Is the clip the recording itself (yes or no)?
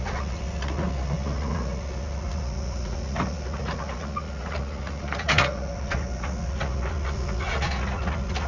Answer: no